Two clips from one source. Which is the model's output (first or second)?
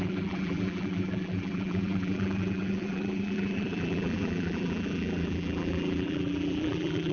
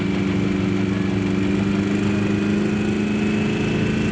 first